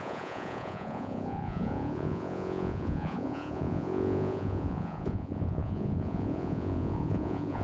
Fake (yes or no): yes